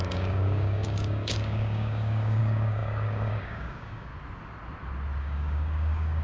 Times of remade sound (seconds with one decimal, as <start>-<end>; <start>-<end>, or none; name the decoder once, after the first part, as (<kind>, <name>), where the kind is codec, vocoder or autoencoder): 0.0-4.1 (codec, DAC); 5.2-6.2